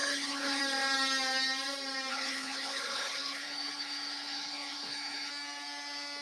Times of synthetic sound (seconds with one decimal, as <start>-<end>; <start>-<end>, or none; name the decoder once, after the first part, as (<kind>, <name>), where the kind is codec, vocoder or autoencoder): 0.0-0.6 (codec, HILCodec); 2.1-5.3